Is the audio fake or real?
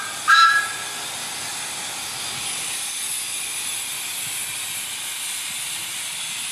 real